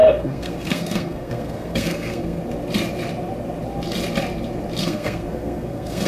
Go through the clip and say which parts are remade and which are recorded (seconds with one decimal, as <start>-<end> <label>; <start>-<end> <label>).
0.0-2.4 remade; 2.4-4.8 recorded; 4.8-6.1 remade

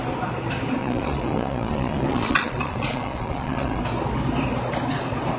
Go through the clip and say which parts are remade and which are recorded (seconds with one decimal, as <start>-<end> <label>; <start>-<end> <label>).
0.0-0.8 recorded; 0.8-3.8 remade; 3.8-5.4 recorded